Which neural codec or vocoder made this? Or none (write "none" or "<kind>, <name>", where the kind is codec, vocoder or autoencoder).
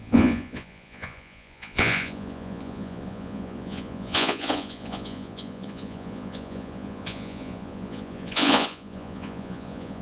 vocoder, Vocos